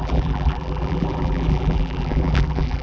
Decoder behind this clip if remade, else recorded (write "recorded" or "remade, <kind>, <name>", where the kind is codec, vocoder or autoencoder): remade, vocoder, BigVGAN v2